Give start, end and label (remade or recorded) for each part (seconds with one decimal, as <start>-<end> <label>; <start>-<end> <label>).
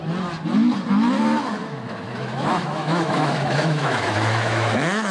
0.0-1.6 recorded; 1.6-5.1 remade